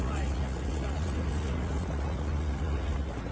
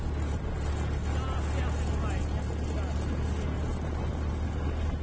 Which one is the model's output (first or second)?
first